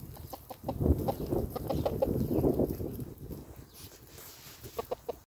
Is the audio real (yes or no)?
yes